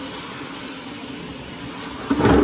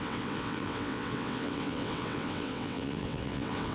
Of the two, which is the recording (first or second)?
first